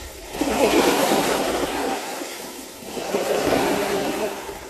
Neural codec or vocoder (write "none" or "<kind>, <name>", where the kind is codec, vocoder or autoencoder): codec, SNAC